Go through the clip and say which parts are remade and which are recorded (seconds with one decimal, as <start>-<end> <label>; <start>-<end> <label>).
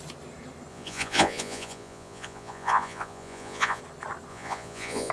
0.0-0.7 recorded; 0.7-3.8 remade; 3.8-4.3 recorded; 4.3-5.1 remade